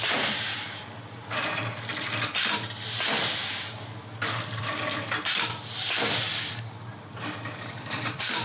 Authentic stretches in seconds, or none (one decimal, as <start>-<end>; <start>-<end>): 1.2-4.6